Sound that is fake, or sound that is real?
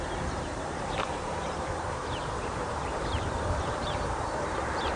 fake